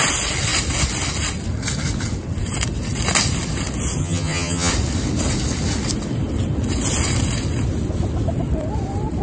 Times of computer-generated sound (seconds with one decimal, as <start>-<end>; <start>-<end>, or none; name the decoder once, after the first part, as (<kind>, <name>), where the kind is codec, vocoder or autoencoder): 4.0-4.7 (vocoder, HiFi-GAN)